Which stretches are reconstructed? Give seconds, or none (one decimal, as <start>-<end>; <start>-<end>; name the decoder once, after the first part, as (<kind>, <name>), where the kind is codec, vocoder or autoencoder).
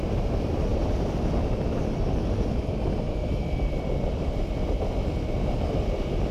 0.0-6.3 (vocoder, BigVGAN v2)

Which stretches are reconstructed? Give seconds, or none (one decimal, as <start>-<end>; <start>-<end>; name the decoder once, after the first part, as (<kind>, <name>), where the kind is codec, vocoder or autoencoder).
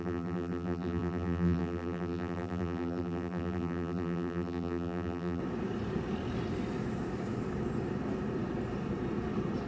0.0-5.4 (vocoder, BigVGAN v2)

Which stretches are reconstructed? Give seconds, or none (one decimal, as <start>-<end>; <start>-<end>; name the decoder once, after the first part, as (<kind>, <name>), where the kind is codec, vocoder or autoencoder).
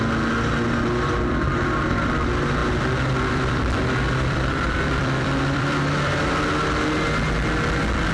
2.6-6.4 (vocoder, BigVGAN v2)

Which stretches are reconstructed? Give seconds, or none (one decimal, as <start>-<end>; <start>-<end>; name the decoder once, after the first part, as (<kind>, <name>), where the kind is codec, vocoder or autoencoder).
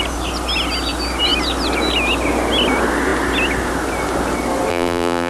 4.7-5.3 (vocoder, BigVGAN v2)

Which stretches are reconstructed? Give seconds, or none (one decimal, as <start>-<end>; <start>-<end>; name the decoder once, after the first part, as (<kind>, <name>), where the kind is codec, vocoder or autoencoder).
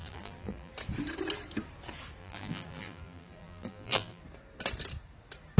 0.0-0.7 (vocoder, BigVGAN v2); 2.2-4.2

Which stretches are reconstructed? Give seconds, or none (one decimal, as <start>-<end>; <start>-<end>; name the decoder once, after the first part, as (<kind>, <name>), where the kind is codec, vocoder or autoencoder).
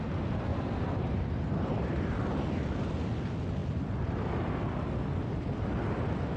0.5-2.1 (vocoder, BigVGAN v2)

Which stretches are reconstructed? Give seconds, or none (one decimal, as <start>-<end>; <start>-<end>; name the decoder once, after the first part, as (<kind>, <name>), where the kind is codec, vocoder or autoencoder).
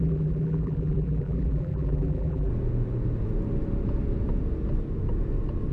0.0-2.5 (vocoder, BigVGAN v2)